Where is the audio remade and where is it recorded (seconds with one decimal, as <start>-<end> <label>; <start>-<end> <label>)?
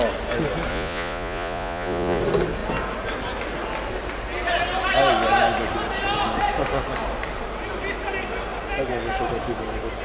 0.0-0.7 recorded; 0.7-2.2 remade; 2.2-10.0 recorded